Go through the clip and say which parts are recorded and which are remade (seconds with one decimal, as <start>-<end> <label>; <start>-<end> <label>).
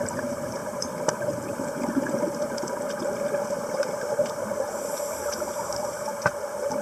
0.0-0.6 remade; 0.6-4.3 recorded; 4.3-6.8 remade